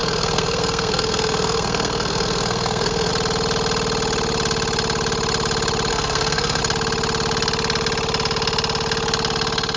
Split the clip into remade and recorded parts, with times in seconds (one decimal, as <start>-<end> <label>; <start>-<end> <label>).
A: 0.0-3.1 remade; 3.1-5.9 recorded; 5.9-6.6 remade; 6.6-9.8 recorded